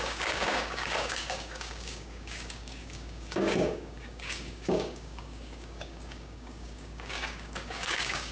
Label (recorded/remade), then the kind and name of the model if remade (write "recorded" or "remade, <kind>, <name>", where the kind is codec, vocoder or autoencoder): remade, codec, DAC